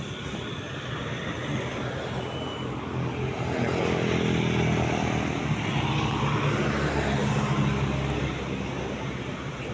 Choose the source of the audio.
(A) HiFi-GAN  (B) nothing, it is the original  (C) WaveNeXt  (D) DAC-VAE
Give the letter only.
B